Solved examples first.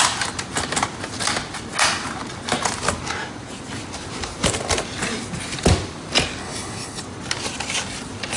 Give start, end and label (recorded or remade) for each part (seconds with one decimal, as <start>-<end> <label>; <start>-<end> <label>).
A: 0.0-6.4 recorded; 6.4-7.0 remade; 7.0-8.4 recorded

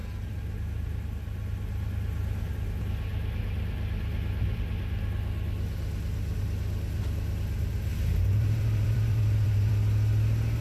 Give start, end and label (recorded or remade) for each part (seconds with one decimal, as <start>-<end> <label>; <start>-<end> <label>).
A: 0.0-7.9 recorded; 7.9-9.7 remade; 9.7-10.6 recorded

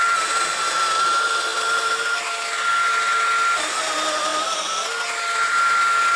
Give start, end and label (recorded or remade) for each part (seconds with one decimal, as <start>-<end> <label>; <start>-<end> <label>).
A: 0.0-6.2 recorded

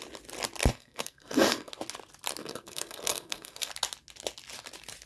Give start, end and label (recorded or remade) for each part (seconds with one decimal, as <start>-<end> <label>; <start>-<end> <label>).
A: 0.0-0.7 recorded; 0.7-1.7 remade; 1.7-2.4 recorded; 2.4-3.7 remade; 3.7-5.1 recorded